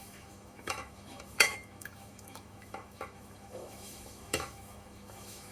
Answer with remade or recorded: remade